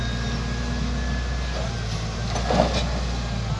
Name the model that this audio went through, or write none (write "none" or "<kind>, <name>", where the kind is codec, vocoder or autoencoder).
none